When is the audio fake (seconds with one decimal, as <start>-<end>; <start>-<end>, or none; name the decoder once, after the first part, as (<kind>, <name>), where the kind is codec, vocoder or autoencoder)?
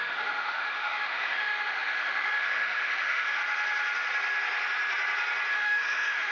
0.0-3.4 (autoencoder, DAC-VAE); 5.5-6.3